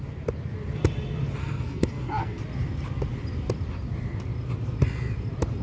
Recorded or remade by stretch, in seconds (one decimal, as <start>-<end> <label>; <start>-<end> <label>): 0.0-1.4 recorded; 1.4-2.4 remade; 2.4-5.6 recorded